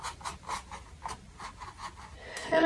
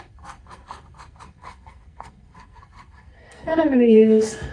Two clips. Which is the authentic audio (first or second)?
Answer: first